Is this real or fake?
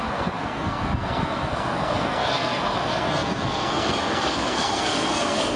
fake